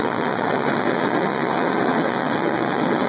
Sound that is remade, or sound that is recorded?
remade